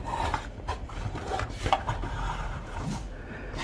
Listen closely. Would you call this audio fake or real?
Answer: fake